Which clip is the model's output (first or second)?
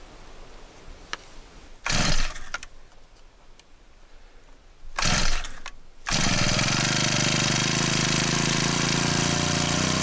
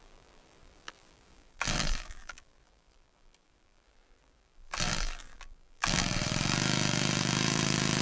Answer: second